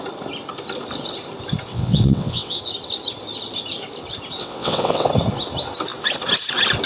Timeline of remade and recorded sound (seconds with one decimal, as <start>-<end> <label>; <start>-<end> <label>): 0.0-1.7 recorded; 1.7-2.6 remade; 2.6-4.4 recorded; 4.4-5.1 remade; 5.1-6.9 recorded